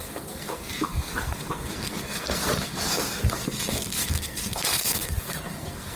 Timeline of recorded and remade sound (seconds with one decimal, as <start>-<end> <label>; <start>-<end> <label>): 0.0-6.0 remade